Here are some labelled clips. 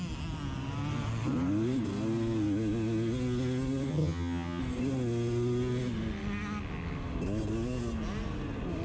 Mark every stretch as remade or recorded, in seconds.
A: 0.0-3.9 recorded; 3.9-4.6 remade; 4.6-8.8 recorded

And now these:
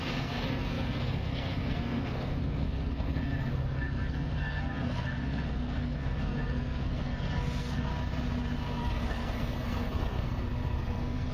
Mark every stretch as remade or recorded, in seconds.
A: 0.0-7.9 remade; 7.9-8.6 recorded; 8.6-11.3 remade

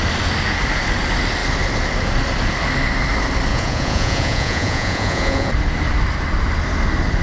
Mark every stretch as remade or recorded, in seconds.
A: 0.0-3.5 recorded; 3.5-5.5 remade; 5.5-7.2 recorded

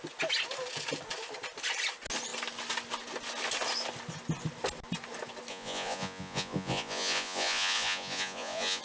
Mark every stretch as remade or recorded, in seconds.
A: 0.0-5.5 recorded; 5.5-8.8 remade

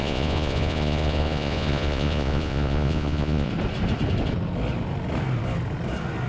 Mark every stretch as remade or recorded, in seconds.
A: 0.0-3.5 remade; 3.5-6.3 recorded